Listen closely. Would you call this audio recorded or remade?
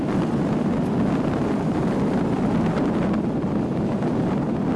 recorded